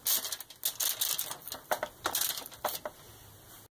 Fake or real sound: real